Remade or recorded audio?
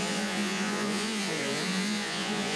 remade